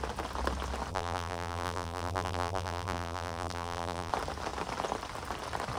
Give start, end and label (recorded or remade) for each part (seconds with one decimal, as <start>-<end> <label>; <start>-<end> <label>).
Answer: 0.0-0.9 recorded; 0.9-4.1 remade; 4.1-5.8 recorded